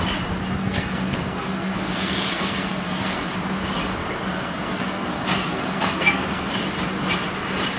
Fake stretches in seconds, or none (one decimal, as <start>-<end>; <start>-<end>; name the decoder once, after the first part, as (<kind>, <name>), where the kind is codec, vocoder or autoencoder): 0.6-3.3 (codec, SNAC); 4.0-6.5